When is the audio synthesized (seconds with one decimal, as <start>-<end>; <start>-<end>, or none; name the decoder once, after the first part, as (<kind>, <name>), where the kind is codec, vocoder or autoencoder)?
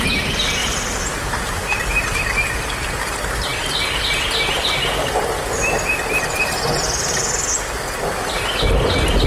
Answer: 0.6-2.2 (vocoder, BigVGAN v2)